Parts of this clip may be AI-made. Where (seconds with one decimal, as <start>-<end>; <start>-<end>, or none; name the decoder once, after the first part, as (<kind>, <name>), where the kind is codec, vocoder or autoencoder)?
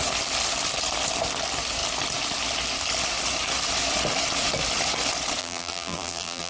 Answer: 5.4-6.5 (vocoder, BigVGAN v2)